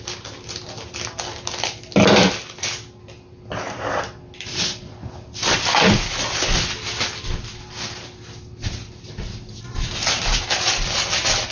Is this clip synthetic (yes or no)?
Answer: no